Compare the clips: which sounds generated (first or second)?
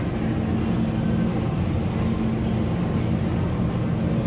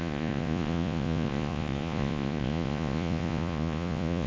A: second